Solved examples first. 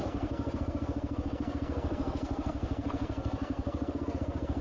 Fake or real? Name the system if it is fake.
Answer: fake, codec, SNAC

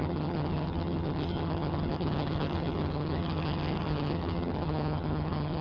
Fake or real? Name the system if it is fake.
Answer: fake, vocoder, HiFi-GAN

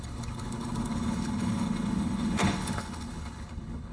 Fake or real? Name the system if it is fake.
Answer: fake, codec, HILCodec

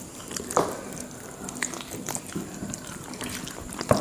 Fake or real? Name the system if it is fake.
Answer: fake, vocoder, BigVGAN v2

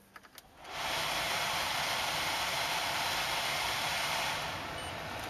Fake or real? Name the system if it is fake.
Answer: real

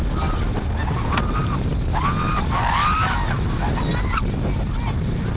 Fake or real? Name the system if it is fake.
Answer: real